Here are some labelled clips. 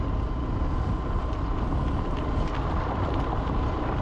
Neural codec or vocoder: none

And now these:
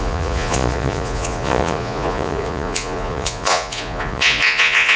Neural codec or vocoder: vocoder, Vocos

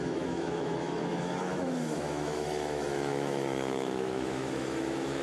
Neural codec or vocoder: autoencoder, DAC-VAE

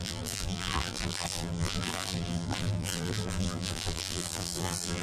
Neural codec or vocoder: vocoder, BigVGAN v2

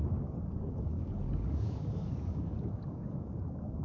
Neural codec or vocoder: codec, DAC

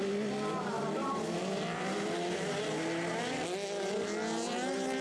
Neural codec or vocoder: none